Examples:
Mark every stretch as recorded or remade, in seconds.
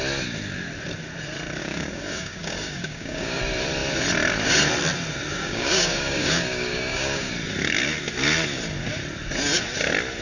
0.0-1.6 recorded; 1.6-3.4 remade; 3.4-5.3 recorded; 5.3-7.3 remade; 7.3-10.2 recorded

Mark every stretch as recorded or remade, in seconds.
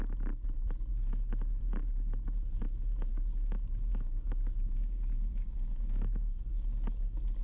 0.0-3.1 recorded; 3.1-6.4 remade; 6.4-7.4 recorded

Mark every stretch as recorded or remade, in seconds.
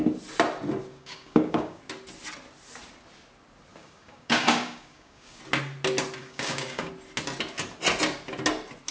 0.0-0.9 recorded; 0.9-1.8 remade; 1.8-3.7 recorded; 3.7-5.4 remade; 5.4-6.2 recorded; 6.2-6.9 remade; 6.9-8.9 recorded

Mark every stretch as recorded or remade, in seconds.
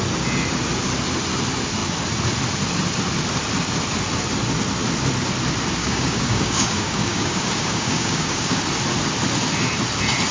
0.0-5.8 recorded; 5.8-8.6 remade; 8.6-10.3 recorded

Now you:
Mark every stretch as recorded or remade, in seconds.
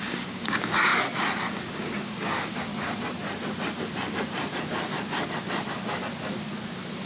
0.0-0.9 remade; 0.9-1.5 recorded; 1.5-2.7 remade; 2.7-7.1 recorded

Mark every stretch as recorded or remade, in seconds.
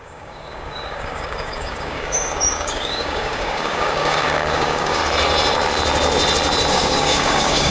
0.0-5.0 remade; 5.0-6.7 recorded; 6.7-7.7 remade